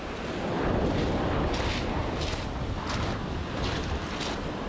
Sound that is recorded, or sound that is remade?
recorded